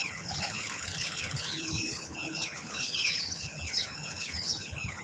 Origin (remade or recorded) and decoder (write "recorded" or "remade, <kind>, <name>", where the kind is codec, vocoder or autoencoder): remade, codec, HILCodec